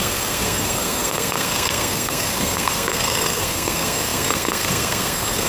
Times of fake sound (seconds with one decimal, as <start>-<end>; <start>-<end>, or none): 0.0-5.5